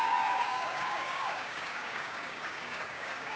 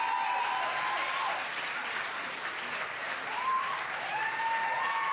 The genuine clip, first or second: second